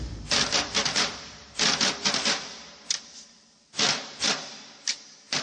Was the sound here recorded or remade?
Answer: remade